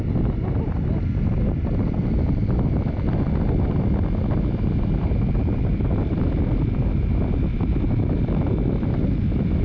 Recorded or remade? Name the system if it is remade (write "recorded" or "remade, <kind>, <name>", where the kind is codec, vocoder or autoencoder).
recorded